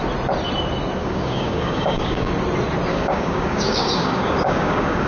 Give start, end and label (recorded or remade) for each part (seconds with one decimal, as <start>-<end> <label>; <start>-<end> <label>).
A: 0.0-1.0 recorded; 1.0-2.3 remade; 2.3-2.9 recorded; 2.9-5.1 remade

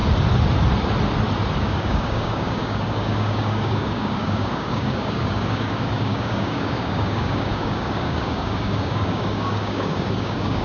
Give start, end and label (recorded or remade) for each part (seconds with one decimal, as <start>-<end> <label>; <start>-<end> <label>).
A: 0.0-1.6 recorded; 1.6-10.6 remade